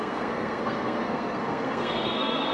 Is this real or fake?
fake